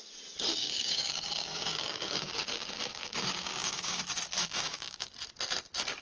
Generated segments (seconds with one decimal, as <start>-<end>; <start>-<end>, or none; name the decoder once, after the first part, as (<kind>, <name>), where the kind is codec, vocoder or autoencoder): 0.5-4.0 (codec, DAC); 4.4-5.1

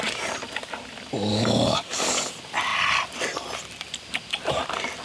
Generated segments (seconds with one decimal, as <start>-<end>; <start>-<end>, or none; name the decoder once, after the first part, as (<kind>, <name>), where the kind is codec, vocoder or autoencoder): 1.3-2.3 (codec, DAC)

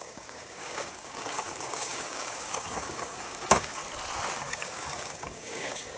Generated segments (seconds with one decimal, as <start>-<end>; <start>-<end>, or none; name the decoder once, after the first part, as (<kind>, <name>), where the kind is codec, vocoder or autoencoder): 0.0-3.8 (codec, DAC); 4.5-6.0

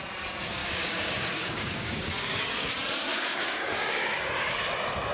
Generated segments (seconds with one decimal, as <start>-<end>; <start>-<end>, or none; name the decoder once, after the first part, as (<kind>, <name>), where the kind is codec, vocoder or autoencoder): 0.6-2.7 (codec, DAC); 3.1-4.3